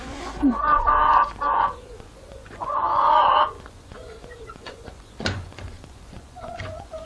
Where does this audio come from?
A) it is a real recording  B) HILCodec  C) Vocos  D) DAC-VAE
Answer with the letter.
C